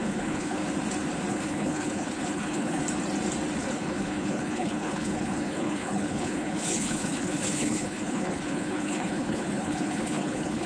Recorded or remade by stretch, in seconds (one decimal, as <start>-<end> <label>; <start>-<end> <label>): 0.0-0.6 remade; 0.6-1.3 recorded; 1.3-2.8 remade; 2.8-3.6 recorded; 3.6-10.7 remade